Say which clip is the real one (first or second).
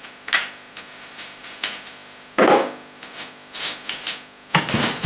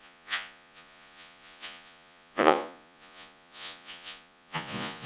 first